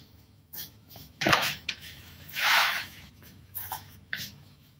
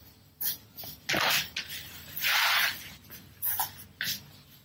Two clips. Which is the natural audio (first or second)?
second